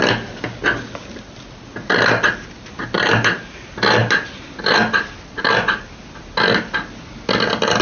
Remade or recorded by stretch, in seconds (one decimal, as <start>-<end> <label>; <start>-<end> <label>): 0.0-7.8 recorded